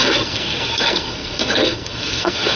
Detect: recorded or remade remade